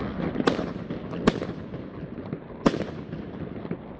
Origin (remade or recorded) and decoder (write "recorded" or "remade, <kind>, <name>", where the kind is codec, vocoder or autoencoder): recorded